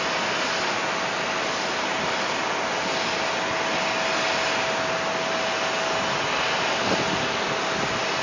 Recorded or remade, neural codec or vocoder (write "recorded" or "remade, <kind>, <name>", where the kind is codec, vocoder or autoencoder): recorded